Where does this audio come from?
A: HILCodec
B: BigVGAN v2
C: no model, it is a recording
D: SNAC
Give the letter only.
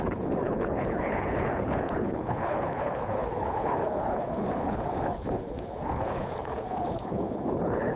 A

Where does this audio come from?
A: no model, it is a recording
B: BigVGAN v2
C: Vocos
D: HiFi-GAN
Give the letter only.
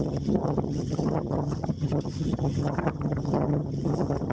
D